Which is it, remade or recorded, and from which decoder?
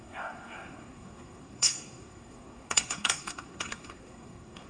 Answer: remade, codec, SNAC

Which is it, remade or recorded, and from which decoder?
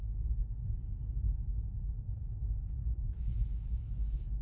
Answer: remade, codec, HILCodec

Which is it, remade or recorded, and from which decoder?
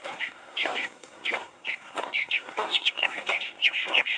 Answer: remade, codec, SNAC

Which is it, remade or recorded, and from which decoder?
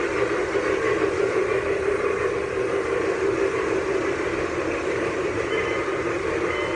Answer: remade, vocoder, BigVGAN v2